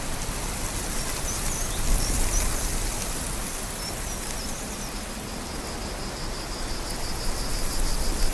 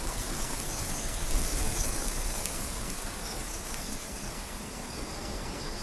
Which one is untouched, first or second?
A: first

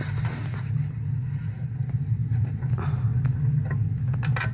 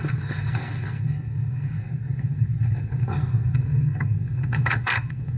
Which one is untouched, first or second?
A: first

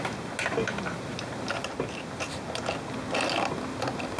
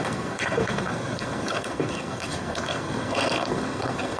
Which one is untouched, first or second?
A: first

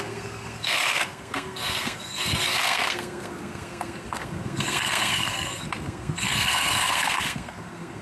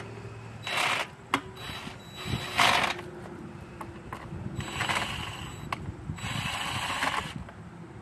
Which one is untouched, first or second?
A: second